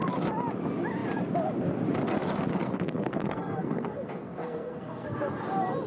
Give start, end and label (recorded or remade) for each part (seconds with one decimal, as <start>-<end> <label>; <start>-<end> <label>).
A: 0.0-2.5 recorded; 2.5-5.3 remade; 5.3-5.9 recorded